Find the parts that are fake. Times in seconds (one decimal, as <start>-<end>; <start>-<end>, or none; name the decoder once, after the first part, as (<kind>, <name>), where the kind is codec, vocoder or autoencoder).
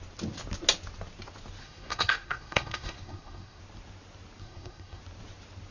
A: 1.6-3.6 (codec, SNAC); 4.4-5.0